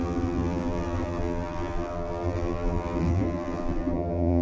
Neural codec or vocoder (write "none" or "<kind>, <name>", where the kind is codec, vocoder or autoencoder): vocoder, BigVGAN v2